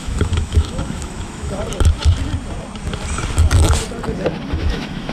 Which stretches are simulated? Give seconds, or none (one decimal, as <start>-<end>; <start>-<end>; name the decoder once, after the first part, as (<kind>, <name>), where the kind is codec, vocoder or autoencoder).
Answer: 0.0-1.6 (autoencoder, DAC-VAE); 4.5-5.1